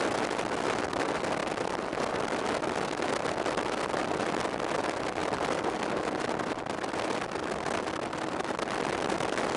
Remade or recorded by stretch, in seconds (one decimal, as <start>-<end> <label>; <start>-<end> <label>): 0.0-9.6 recorded